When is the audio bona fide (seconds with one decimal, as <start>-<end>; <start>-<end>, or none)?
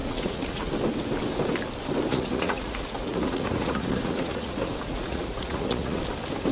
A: 0.7-2.1; 6.0-6.5